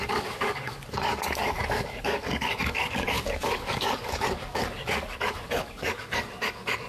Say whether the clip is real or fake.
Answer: fake